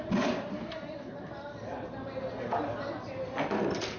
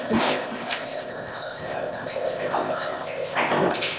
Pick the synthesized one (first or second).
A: second